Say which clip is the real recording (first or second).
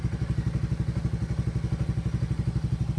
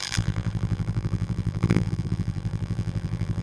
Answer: first